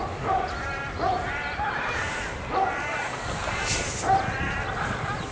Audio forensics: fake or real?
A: fake